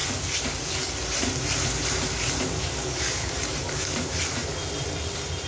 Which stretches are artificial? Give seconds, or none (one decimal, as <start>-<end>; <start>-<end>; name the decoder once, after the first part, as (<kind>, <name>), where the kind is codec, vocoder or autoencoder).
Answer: 0.0-0.9 (codec, DAC); 2.6-4.1